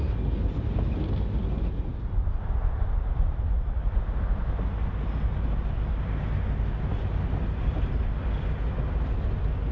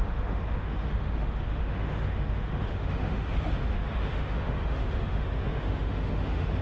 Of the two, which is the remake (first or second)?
second